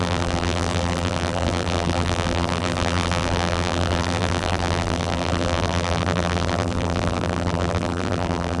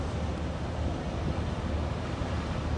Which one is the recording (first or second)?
second